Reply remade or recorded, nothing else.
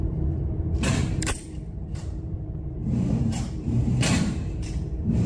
remade